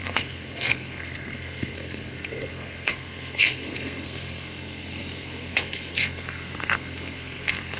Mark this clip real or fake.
fake